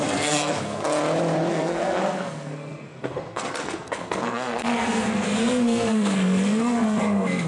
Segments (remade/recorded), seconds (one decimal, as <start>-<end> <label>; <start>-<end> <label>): 0.0-0.8 remade; 0.8-1.5 recorded; 1.5-7.5 remade